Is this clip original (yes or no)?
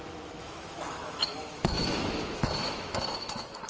no